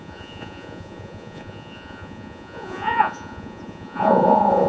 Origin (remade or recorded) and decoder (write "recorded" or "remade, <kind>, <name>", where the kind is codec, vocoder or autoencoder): remade, vocoder, Vocos